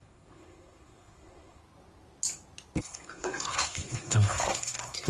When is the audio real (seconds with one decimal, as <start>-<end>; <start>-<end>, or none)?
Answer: 1.6-2.8